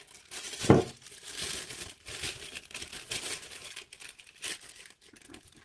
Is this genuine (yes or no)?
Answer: yes